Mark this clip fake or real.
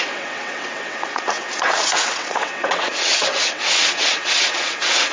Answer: fake